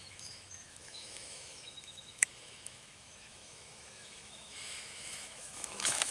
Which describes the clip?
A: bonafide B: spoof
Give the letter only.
B